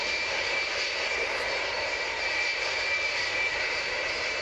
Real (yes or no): no